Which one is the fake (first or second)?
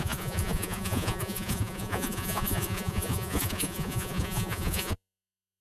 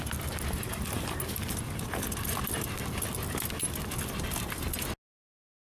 first